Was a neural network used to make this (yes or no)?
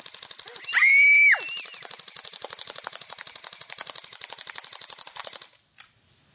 no